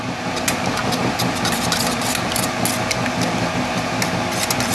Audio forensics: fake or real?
real